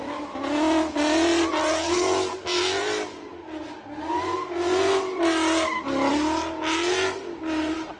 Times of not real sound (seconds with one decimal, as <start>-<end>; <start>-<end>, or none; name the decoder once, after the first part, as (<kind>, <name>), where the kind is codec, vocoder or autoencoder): none

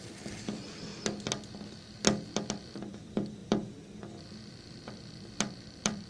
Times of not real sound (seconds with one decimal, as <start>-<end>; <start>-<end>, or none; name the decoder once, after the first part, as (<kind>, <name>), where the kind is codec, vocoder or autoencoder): 0.0-0.9 (vocoder, BigVGAN v2); 2.9-6.1

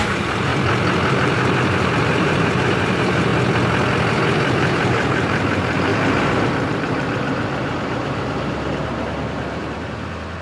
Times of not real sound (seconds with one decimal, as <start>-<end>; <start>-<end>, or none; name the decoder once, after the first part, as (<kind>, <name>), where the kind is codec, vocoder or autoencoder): 0.0-0.5 (vocoder, BigVGAN v2); 1.1-3.3; 4.1-5.9; 6.7-10.4

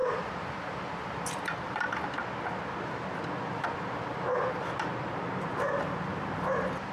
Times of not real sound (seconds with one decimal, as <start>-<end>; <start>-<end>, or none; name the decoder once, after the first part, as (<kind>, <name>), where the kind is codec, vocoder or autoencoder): 0.0-1.8 (vocoder, BigVGAN v2)

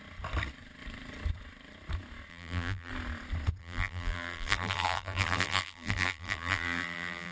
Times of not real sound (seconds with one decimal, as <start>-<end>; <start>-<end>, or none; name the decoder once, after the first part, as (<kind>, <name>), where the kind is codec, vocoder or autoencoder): 2.3-2.9 (vocoder, BigVGAN v2); 3.6-7.3

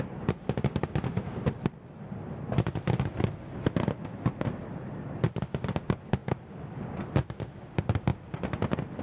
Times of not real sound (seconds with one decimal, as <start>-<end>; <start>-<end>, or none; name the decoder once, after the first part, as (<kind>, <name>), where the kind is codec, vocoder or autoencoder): 6.2-6.9 (vocoder, BigVGAN v2)

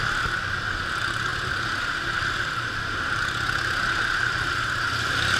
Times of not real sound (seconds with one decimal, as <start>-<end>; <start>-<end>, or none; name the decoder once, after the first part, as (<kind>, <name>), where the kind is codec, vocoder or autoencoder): none